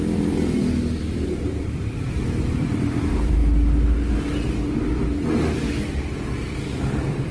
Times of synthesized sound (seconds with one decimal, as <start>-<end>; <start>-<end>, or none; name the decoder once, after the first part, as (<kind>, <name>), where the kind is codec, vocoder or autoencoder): 0.0-3.4 (vocoder, BigVGAN v2); 6.6-7.3